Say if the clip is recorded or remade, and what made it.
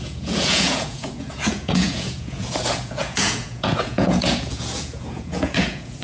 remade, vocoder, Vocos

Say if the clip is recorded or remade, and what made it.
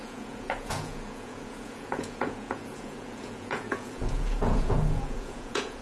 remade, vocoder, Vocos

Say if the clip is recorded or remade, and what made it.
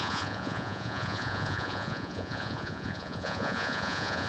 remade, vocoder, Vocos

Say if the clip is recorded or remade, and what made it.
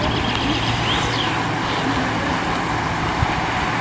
recorded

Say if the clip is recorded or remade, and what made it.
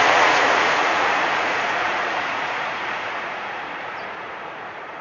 remade, vocoder, Vocos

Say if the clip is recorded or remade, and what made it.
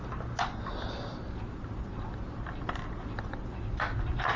recorded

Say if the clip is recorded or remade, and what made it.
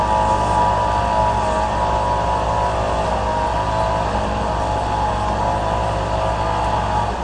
recorded